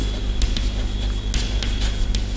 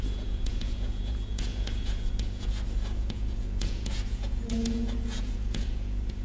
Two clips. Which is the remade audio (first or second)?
second